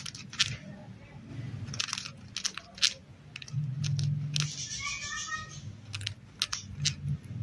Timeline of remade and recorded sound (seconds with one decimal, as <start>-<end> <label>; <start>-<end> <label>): 0.0-7.4 recorded